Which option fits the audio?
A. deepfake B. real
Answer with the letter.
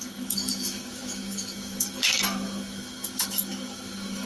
A